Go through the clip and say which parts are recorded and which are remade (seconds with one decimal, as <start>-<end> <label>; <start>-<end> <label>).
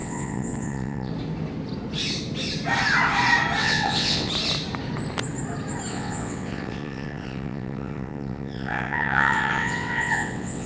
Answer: 0.0-1.1 remade; 1.1-3.6 recorded; 3.6-4.3 remade; 4.3-5.9 recorded; 5.9-10.7 remade